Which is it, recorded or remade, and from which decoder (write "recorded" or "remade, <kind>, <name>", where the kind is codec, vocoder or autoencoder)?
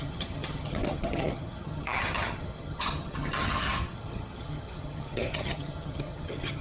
remade, vocoder, HiFi-GAN